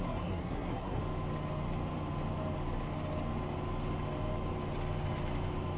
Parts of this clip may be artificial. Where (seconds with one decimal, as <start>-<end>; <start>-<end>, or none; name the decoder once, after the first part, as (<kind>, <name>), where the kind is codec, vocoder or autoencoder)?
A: 0.0-1.0 (codec, SNAC)